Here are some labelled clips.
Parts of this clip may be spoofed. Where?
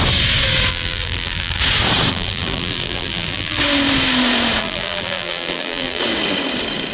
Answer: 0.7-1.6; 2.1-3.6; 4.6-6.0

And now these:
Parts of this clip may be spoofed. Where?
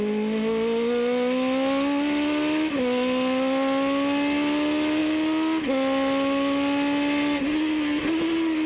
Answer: none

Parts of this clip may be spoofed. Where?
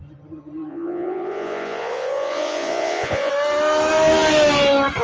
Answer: 0.7-3.3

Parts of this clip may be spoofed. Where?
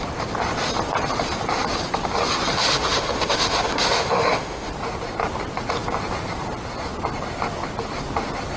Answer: 2.6-4.7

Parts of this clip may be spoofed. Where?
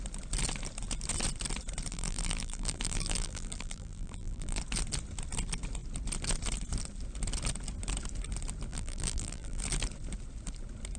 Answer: 1.9-4.6; 8.7-9.6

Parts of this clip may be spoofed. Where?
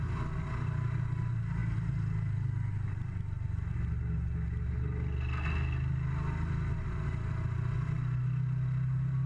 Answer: none